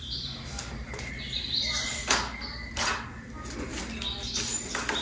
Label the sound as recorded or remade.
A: recorded